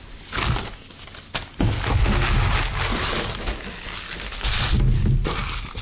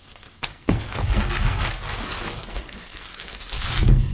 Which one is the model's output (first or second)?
second